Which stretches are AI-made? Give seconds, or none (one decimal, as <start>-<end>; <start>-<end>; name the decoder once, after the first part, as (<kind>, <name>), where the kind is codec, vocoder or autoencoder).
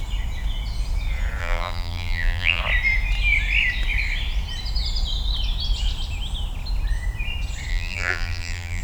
1.4-2.6 (vocoder, BigVGAN v2); 7.7-8.8